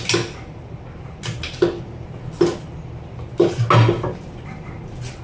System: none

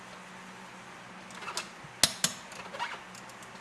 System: none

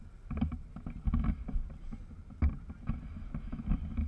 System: none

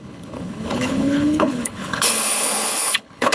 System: codec, HILCodec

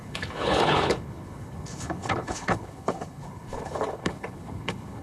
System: codec, HILCodec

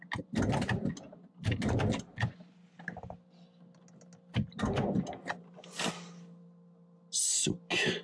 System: none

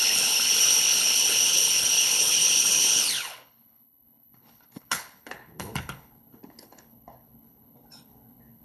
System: codec, HILCodec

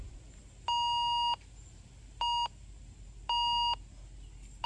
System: none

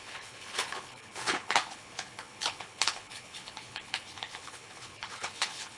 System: codec, HILCodec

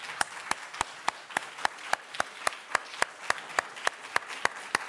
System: none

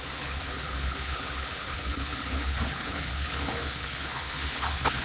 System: codec, HILCodec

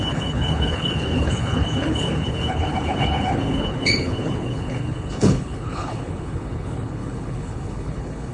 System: codec, HILCodec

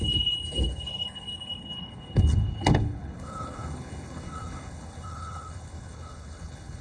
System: codec, HILCodec